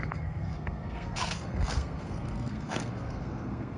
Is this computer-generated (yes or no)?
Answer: yes